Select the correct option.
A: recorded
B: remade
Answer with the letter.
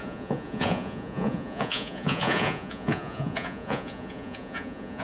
B